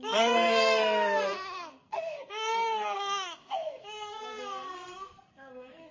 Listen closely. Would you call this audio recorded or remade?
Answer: remade